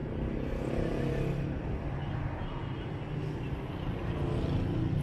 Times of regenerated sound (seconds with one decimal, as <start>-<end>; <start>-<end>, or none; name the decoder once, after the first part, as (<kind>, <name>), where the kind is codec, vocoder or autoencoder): none